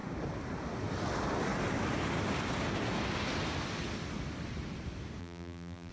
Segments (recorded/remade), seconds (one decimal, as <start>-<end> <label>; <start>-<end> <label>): 0.0-5.2 recorded; 5.2-5.9 remade